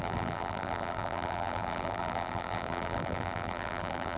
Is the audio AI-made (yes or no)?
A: yes